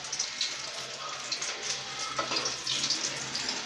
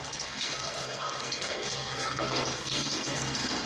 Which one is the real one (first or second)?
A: first